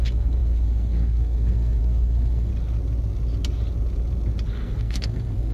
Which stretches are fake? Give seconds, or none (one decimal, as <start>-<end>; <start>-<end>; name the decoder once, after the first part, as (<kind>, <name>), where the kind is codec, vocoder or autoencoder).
0.0-2.5 (codec, SNAC); 4.5-5.5